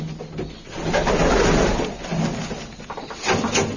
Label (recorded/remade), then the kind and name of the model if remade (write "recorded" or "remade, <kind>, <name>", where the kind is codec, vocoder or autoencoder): recorded